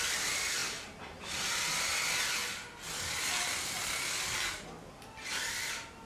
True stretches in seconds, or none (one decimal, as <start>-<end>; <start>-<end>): 0.0-6.1